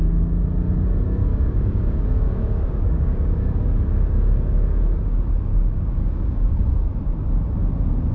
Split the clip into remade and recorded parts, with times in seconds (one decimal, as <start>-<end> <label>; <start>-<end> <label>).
0.0-1.3 recorded; 1.3-3.7 remade; 3.7-5.5 recorded; 5.5-6.7 remade; 6.7-8.1 recorded